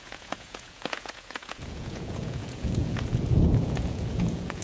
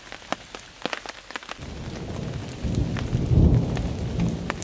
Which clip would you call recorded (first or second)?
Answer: second